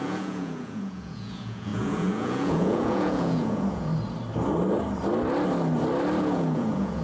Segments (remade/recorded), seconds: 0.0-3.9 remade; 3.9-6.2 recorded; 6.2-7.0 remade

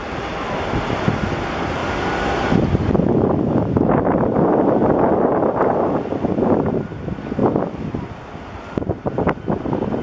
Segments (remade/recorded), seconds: 0.0-10.0 recorded

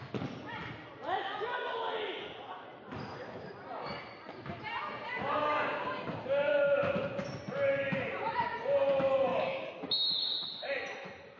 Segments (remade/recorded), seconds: 0.0-5.4 recorded; 5.4-5.9 remade; 5.9-9.3 recorded; 9.3-9.8 remade; 9.8-11.4 recorded

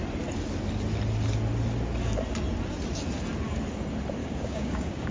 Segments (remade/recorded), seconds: 0.0-4.2 recorded; 4.2-5.1 remade

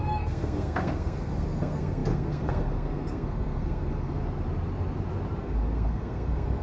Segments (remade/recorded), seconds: 0.0-4.2 remade; 4.2-5.4 recorded; 5.4-6.6 remade